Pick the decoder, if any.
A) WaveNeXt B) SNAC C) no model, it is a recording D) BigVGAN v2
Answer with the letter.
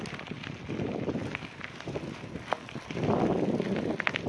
C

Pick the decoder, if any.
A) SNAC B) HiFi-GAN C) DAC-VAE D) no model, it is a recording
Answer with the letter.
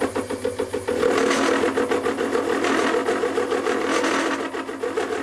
D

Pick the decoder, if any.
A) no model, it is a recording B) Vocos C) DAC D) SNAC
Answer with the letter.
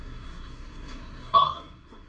D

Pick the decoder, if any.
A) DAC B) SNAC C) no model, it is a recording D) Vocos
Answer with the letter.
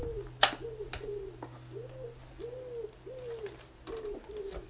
C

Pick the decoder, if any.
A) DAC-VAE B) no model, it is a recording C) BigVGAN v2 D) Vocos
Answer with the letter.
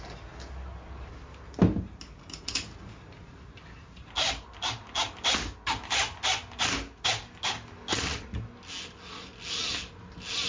B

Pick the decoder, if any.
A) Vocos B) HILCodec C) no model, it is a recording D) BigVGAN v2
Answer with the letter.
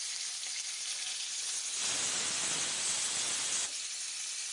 C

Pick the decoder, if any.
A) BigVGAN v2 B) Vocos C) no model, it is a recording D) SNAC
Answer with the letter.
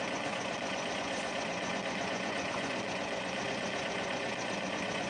B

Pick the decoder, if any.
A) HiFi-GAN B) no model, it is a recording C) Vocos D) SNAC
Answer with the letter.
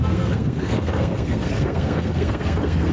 D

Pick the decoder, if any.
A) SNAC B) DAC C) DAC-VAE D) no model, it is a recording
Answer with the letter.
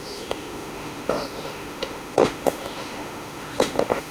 C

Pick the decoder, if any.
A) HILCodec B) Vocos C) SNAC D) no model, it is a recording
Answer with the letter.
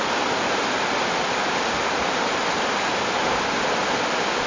D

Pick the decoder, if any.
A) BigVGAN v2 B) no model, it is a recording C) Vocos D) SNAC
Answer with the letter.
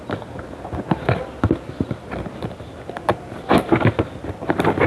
B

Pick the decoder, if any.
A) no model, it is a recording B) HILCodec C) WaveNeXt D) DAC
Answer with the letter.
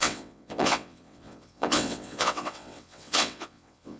C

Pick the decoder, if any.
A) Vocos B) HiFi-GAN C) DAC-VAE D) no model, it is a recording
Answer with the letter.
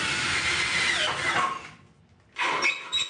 D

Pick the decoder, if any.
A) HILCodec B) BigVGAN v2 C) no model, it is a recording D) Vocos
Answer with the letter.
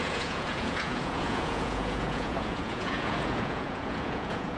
D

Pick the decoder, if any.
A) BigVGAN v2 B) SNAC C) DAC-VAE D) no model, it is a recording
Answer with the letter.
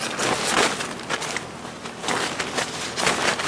D